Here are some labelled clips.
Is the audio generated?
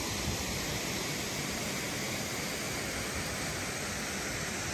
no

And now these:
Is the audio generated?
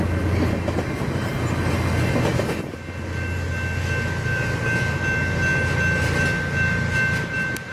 no